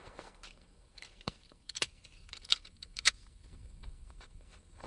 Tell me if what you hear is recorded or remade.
remade